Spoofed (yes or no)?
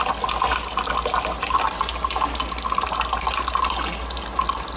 no